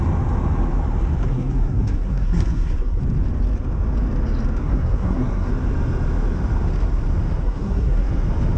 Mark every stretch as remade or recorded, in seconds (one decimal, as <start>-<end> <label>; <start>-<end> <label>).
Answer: 0.0-1.3 recorded; 1.3-3.0 remade; 3.0-4.6 recorded; 4.6-5.5 remade; 5.5-7.4 recorded; 7.4-8.1 remade; 8.1-8.6 recorded